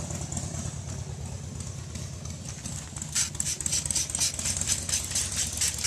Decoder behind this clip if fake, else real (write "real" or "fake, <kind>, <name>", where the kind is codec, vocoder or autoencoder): real